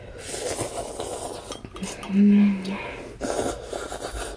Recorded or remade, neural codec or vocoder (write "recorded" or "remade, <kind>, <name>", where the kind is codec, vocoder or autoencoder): recorded